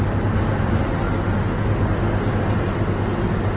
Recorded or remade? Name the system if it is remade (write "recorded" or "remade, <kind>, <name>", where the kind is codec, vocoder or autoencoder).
recorded